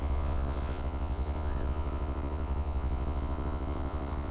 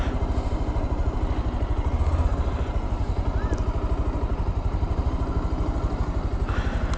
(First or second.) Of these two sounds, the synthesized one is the first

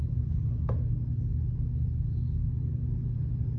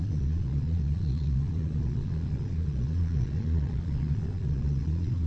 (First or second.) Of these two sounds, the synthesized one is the second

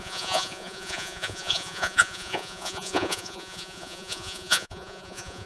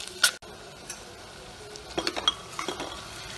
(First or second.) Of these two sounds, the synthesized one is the first